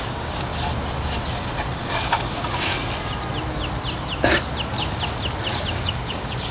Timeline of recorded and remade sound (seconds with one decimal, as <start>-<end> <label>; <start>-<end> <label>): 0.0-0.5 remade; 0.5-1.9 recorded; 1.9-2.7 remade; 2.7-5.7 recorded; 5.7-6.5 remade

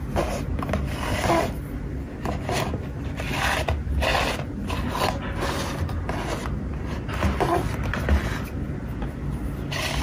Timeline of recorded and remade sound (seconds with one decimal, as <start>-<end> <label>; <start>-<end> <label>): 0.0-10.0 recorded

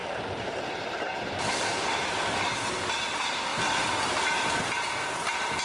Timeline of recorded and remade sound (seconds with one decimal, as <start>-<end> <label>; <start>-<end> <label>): 0.0-5.6 recorded

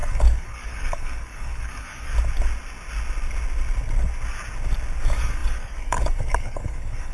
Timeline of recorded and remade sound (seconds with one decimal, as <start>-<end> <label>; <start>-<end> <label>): 0.0-2.1 remade; 2.1-5.0 recorded; 5.0-7.1 remade

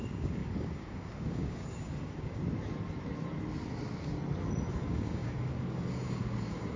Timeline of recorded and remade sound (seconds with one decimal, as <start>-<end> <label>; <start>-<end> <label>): 0.0-2.4 remade; 2.4-4.7 recorded; 4.7-6.8 remade